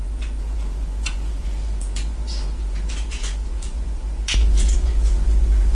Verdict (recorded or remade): remade